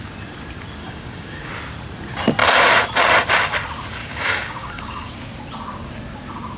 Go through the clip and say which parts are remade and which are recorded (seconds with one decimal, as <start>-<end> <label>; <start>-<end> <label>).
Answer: 0.0-0.8 recorded; 0.8-1.5 remade; 1.5-4.0 recorded; 4.0-5.1 remade; 5.1-6.6 recorded

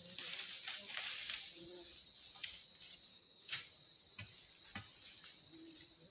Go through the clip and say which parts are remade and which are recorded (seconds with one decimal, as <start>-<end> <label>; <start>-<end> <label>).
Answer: 0.0-3.1 recorded; 3.1-3.6 remade; 3.6-6.1 recorded

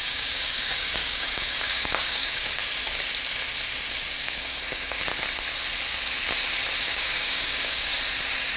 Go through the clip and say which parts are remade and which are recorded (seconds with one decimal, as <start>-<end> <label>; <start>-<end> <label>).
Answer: 0.0-2.6 remade; 2.6-4.2 recorded; 4.2-5.1 remade; 5.1-6.8 recorded; 6.8-7.9 remade; 7.9-8.6 recorded

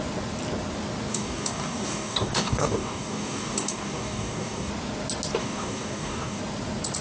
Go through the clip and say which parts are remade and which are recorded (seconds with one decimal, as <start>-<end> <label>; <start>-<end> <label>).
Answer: 0.0-1.1 recorded; 1.1-4.7 remade; 4.7-5.4 recorded; 5.4-6.4 remade; 6.4-7.0 recorded

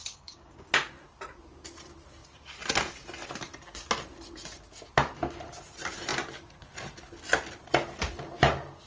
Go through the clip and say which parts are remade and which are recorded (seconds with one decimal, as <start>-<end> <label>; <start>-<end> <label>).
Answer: 0.0-0.7 remade; 0.7-8.9 recorded

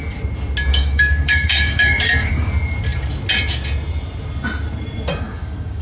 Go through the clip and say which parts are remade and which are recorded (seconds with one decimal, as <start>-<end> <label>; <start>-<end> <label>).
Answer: 0.0-0.7 recorded; 0.7-2.5 remade; 2.5-5.1 recorded; 5.1-5.8 remade

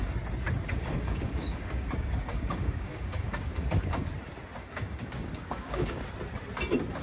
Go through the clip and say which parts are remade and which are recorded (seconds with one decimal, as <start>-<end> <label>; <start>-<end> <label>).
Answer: 0.0-0.8 recorded; 0.8-4.1 remade; 4.1-4.6 recorded; 4.6-6.0 remade; 6.0-7.0 recorded